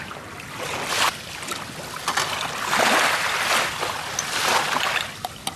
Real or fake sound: real